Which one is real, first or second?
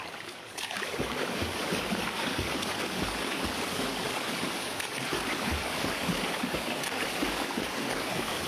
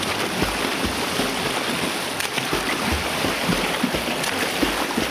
second